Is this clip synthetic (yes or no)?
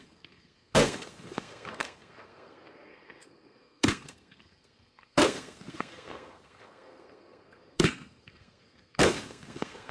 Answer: yes